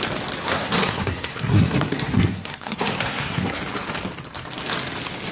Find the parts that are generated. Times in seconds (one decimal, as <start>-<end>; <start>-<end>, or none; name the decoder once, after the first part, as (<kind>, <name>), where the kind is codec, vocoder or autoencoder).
0.4-3.6 (codec, SNAC)